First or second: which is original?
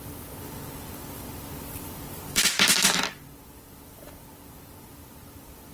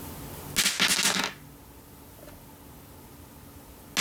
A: second